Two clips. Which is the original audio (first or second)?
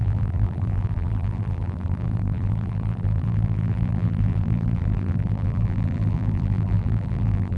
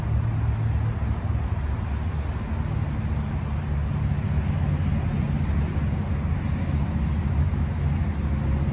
second